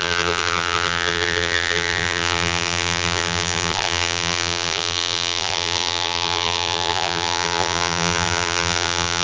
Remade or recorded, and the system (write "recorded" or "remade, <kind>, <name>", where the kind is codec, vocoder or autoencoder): remade, vocoder, BigVGAN v2